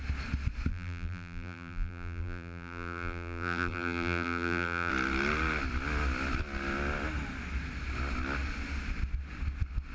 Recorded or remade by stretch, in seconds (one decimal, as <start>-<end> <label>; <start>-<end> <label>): 0.0-0.7 recorded; 0.7-4.9 remade; 4.9-9.9 recorded